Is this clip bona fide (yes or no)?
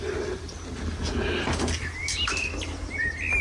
yes